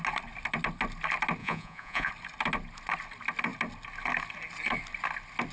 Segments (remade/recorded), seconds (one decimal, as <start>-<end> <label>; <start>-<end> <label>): 0.0-1.4 recorded; 1.4-2.1 remade; 2.1-5.5 recorded